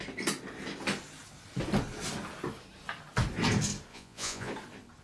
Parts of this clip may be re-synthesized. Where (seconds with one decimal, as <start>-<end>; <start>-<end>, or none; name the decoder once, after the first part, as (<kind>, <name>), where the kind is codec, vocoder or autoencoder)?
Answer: 3.9-4.5 (vocoder, Vocos)